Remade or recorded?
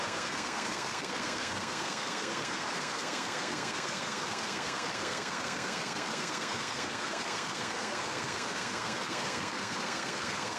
remade